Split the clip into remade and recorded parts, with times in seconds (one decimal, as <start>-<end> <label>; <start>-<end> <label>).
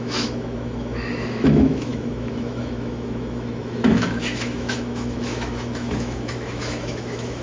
0.0-7.4 remade